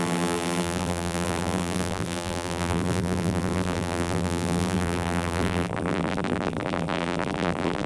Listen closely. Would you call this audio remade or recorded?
remade